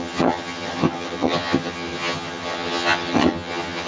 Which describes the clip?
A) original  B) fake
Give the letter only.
B